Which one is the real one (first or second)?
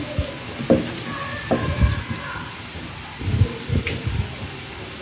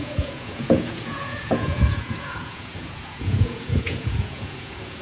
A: first